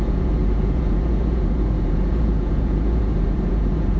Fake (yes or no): yes